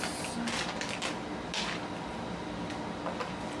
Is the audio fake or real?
real